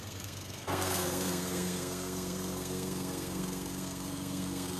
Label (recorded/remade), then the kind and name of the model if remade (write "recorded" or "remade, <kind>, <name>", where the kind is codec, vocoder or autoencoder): remade, codec, SNAC